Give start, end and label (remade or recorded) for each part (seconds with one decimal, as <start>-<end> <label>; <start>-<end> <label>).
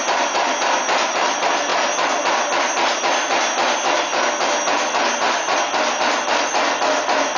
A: 0.0-7.4 recorded